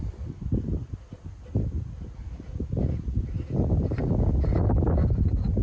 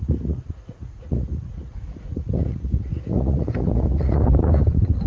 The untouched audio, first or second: first